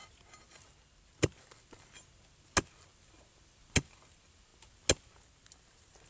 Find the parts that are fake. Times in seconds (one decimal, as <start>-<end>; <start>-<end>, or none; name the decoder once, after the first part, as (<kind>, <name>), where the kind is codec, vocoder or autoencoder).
none